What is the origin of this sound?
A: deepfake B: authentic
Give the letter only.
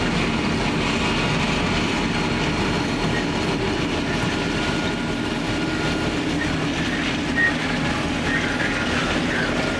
B